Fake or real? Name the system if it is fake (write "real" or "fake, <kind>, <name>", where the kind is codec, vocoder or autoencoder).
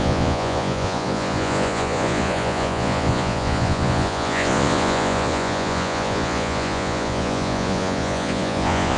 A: fake, vocoder, Vocos